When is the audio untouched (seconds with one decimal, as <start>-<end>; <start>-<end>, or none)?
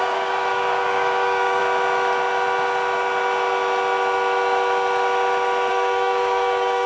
1.6-5.7